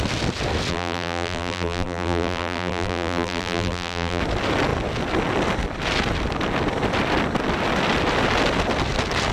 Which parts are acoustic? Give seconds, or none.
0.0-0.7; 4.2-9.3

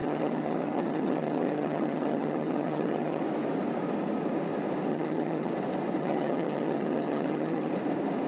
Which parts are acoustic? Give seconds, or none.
3.2-4.9; 5.5-6.0; 7.7-8.3